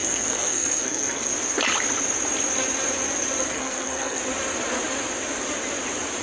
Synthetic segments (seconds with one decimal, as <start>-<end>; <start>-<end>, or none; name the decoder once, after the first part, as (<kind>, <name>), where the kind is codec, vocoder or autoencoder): 0.0-1.3 (codec, SNAC); 3.4-4.2